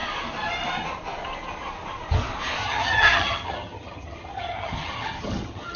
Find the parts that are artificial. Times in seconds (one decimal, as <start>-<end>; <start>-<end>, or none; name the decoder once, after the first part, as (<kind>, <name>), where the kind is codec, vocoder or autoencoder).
2.6-5.8 (vocoder, HiFi-GAN)